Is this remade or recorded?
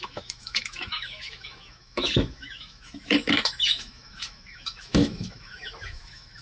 remade